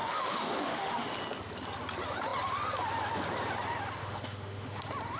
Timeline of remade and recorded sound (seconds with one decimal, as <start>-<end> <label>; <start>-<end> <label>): 0.0-1.1 remade; 1.1-4.0 recorded; 4.0-4.8 remade; 4.8-5.2 recorded